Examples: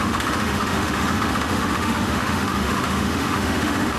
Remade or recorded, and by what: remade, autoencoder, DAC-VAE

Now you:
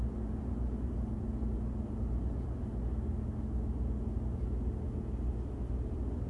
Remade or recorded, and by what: recorded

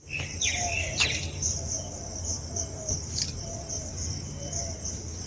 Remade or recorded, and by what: recorded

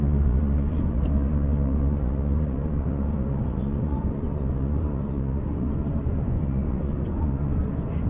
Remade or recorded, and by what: remade, vocoder, Vocos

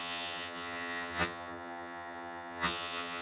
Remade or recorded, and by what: remade, vocoder, HiFi-GAN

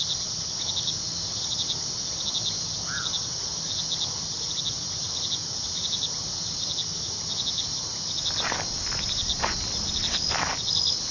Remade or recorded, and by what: recorded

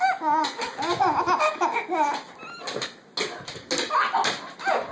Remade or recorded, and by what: recorded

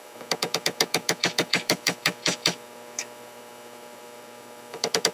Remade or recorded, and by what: remade, autoencoder, DAC-VAE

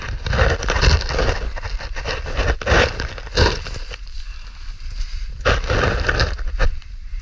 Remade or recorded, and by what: recorded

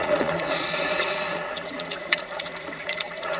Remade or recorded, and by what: remade, vocoder, Vocos